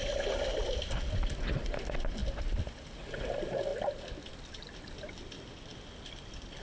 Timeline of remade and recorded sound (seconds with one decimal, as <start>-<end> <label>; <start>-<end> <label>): 0.0-6.6 recorded